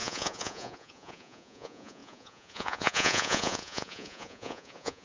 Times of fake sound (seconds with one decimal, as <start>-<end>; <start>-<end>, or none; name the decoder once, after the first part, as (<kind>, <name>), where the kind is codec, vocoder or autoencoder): 0.0-5.0 (vocoder, Vocos)

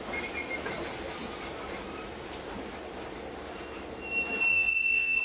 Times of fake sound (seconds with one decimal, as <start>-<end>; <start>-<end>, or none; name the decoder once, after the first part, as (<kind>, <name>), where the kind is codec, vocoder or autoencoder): 4.5-5.2 (vocoder, Vocos)